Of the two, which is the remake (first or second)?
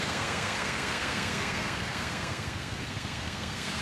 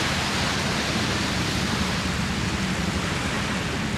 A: first